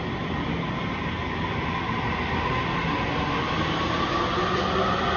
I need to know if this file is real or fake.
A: real